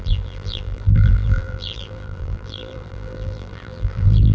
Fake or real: fake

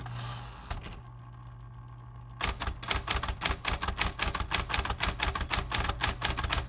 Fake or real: real